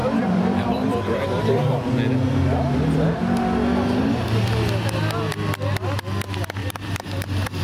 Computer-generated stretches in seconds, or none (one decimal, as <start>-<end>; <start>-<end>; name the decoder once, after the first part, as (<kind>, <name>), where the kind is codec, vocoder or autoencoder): 0.0-1.9 (vocoder, BigVGAN v2); 6.6-7.6